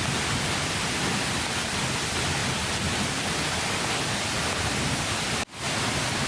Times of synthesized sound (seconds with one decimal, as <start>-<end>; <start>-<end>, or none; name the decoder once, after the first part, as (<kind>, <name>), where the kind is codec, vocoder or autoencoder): none